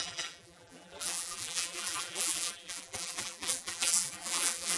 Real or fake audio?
fake